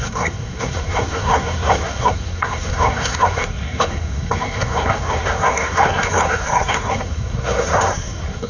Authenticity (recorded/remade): remade